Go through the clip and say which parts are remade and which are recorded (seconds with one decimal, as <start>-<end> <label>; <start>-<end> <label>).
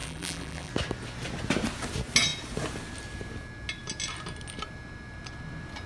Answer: 0.0-0.7 remade; 0.7-5.9 recorded